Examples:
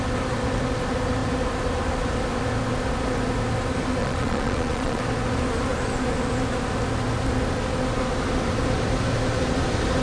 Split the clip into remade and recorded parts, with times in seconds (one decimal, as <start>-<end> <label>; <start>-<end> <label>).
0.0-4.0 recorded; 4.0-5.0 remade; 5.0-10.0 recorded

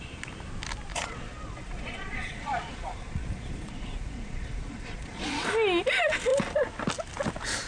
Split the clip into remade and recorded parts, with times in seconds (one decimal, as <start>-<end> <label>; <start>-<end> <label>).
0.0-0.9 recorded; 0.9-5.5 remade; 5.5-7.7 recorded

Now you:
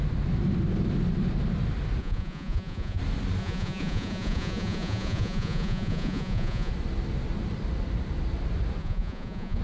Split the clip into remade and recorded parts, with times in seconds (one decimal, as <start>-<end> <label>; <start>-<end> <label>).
0.0-2.0 recorded; 2.0-3.0 remade; 3.0-3.4 recorded; 3.4-6.7 remade; 6.7-8.8 recorded; 8.8-9.6 remade

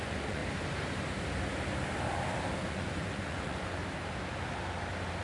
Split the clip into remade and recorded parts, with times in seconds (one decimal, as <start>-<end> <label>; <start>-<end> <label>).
0.0-0.4 remade; 0.4-2.7 recorded; 2.7-3.8 remade; 3.8-5.2 recorded

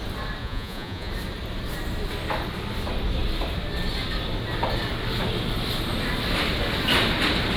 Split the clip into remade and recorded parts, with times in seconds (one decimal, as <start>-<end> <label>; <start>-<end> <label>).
0.0-0.4 recorded; 0.4-1.1 remade; 1.1-7.6 recorded

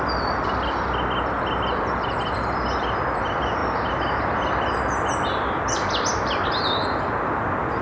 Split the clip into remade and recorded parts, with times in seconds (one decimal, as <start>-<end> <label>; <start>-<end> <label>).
0.0-7.8 recorded

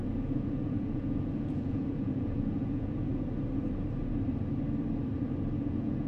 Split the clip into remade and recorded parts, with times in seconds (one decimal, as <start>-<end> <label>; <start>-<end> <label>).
0.0-3.1 remade; 3.1-5.6 recorded; 5.6-6.1 remade

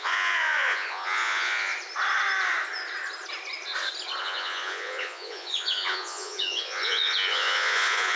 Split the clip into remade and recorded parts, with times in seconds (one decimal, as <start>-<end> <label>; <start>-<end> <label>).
0.0-1.7 remade; 1.7-4.2 recorded; 4.2-8.2 remade